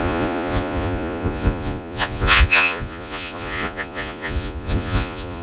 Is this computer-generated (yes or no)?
yes